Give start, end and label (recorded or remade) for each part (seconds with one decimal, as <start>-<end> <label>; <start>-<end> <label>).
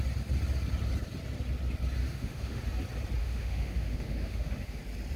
0.0-2.0 recorded; 2.0-2.6 remade; 2.6-3.2 recorded; 3.2-4.8 remade; 4.8-5.2 recorded